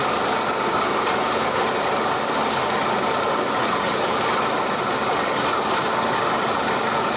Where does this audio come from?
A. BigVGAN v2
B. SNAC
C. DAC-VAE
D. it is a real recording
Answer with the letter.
D